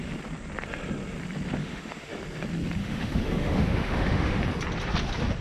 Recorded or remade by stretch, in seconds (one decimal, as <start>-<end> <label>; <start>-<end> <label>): 0.0-1.6 recorded; 1.6-2.1 remade; 2.1-2.8 recorded; 2.8-4.4 remade; 4.4-5.4 recorded